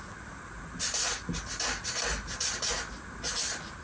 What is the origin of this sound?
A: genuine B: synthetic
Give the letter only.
A